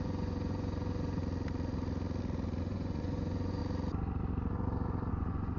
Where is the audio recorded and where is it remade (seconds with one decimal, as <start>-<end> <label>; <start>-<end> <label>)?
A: 0.0-1.2 remade; 1.2-2.6 recorded; 2.6-3.6 remade; 3.6-5.1 recorded; 5.1-5.6 remade